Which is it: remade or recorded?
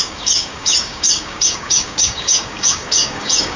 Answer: remade